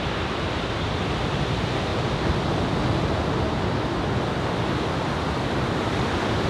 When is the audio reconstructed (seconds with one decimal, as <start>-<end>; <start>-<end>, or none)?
0.0-1.9; 5.8-6.5